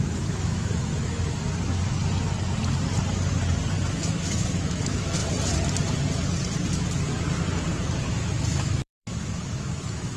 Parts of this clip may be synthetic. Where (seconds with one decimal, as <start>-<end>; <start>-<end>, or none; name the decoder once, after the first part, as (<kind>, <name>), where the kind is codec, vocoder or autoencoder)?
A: 0.0-0.9 (autoencoder, DAC-VAE); 3.9-5.2; 8.1-10.2